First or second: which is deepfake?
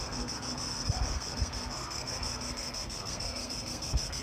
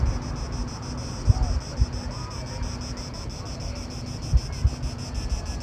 first